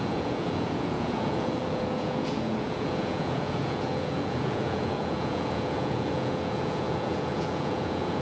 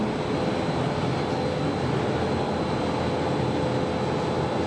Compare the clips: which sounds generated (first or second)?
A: first